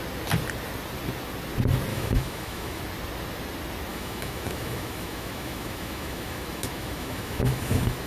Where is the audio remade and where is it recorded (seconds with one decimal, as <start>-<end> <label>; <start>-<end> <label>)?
0.0-1.9 recorded; 1.9-2.8 remade; 2.8-3.9 recorded; 3.9-8.1 remade